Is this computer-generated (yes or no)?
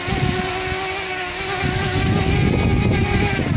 no